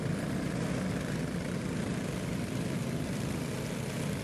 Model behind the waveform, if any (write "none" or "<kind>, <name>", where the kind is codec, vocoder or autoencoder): none